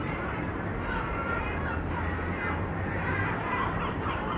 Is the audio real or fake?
fake